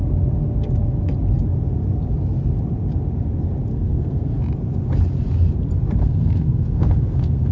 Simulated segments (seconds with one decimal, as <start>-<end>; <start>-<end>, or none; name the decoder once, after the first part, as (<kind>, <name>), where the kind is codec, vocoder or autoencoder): 3.7-4.3 (codec, SNAC); 6.0-7.5